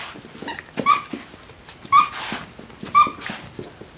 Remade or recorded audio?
recorded